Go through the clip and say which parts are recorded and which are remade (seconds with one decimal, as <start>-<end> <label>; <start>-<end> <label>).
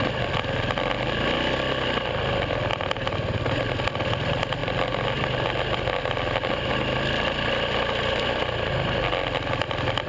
0.0-10.1 recorded